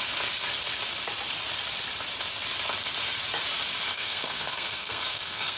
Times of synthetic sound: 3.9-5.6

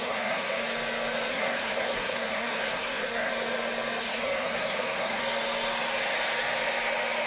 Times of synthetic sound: 0.0-0.6; 1.3-3.3; 4.0-5.2